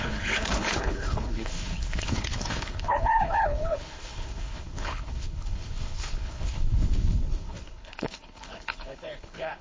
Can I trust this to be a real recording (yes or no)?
no